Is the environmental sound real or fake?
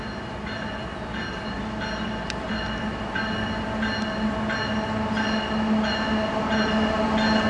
real